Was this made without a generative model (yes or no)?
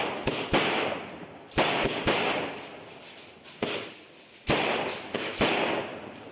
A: yes